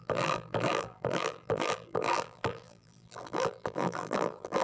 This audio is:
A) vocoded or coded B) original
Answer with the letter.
A